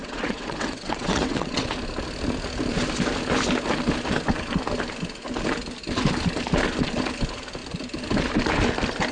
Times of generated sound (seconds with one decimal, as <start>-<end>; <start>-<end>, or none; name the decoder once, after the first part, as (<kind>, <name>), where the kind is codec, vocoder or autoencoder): 0.0-1.7 (vocoder, WaveNeXt)